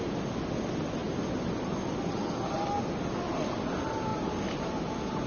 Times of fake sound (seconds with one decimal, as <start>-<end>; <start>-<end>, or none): none